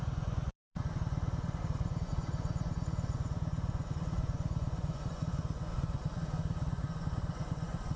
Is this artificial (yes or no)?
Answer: yes